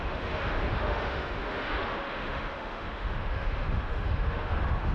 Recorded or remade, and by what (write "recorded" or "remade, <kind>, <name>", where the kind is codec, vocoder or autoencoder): remade, autoencoder, DAC-VAE